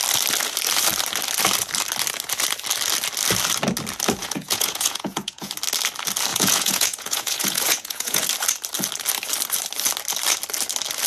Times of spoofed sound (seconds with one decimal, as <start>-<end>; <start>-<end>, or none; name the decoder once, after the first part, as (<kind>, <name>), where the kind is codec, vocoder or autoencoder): 4.2-5.5 (vocoder, Vocos); 6.3-8.3